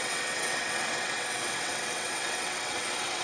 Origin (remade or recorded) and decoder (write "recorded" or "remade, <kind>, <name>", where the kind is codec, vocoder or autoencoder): remade, vocoder, WaveNeXt